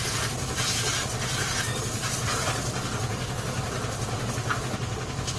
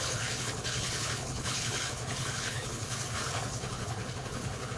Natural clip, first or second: first